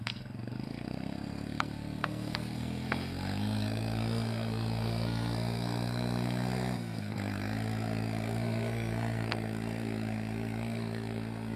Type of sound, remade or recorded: remade